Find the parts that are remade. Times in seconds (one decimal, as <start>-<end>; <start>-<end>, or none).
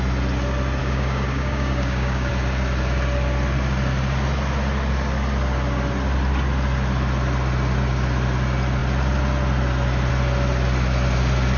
0.8-2.3